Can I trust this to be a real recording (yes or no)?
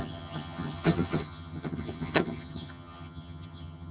no